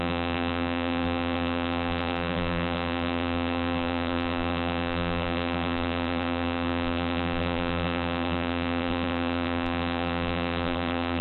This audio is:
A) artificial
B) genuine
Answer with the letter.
A